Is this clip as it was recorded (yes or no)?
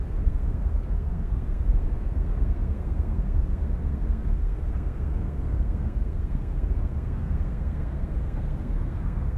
no